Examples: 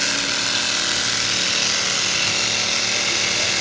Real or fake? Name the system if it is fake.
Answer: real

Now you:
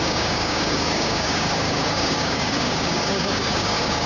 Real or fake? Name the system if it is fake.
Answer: fake, codec, DAC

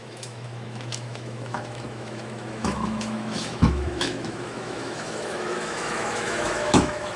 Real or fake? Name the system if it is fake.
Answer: fake, autoencoder, DAC-VAE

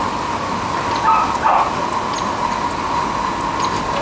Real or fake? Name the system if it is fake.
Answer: real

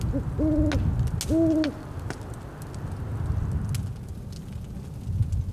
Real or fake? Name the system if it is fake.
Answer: real